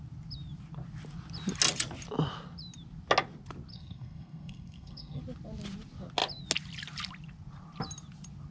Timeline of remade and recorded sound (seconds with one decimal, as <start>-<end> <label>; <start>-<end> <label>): 0.0-3.7 recorded; 3.7-5.2 remade; 5.2-8.5 recorded